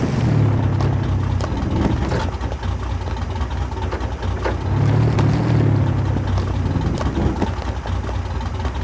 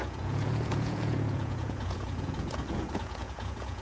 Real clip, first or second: first